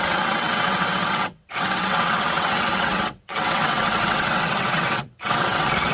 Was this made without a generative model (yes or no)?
no